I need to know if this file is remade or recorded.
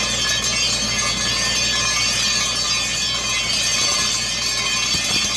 recorded